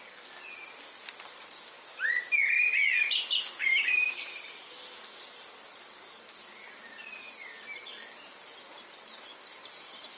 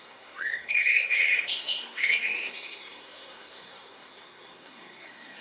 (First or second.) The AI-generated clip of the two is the second